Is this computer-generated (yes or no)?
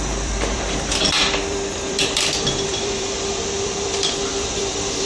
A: yes